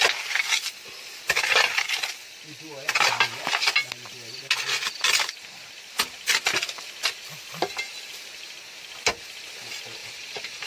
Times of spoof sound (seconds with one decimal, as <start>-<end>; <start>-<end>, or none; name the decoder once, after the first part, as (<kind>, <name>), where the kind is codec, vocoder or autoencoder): 10.0-10.7 (vocoder, BigVGAN v2)